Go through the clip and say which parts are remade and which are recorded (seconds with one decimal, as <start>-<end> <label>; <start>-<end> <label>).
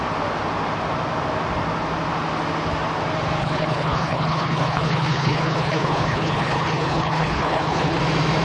0.0-3.4 recorded; 3.4-8.0 remade; 8.0-8.4 recorded